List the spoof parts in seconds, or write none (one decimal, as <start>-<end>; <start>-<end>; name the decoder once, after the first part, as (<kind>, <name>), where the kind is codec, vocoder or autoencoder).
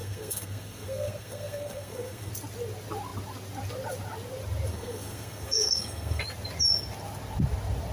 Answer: 0.0-2.3 (codec, SNAC); 4.7-6.2